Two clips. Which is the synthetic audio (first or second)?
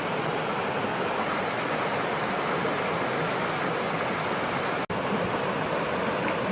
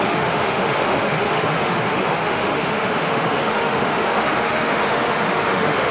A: second